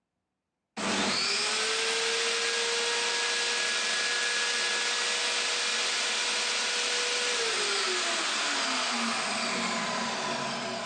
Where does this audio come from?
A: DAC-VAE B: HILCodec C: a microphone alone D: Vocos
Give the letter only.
C